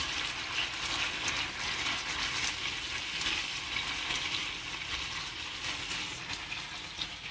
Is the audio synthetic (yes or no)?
no